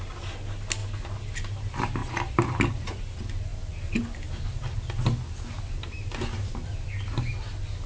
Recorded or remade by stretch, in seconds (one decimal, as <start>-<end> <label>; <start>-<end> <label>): 0.0-7.9 recorded